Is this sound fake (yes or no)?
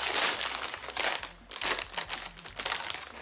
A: no